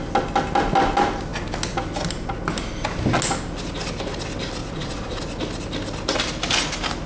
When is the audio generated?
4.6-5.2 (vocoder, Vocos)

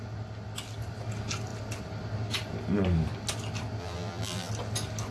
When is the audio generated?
3.8-4.5 (vocoder, BigVGAN v2)

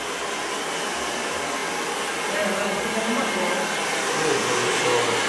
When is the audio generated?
none

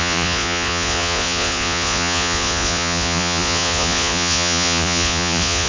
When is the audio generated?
0.0-5.7 (vocoder, Vocos)

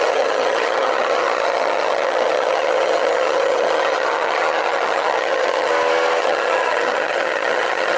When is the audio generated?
0.0-5.7 (vocoder, HiFi-GAN); 6.2-8.0